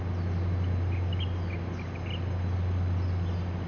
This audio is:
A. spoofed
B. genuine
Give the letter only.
B